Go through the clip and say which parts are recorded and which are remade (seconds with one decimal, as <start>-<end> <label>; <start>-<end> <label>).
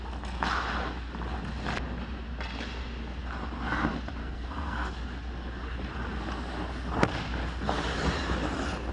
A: 0.0-4.2 recorded; 4.2-4.9 remade; 4.9-8.9 recorded